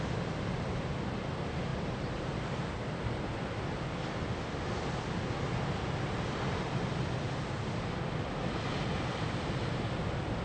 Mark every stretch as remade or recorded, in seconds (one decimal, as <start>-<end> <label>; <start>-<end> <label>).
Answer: 0.0-1.7 recorded; 1.7-2.8 remade; 2.8-10.4 recorded